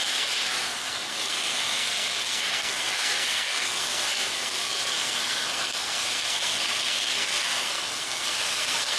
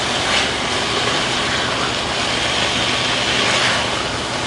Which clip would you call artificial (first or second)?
first